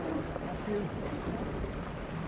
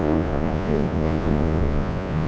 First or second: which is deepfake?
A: second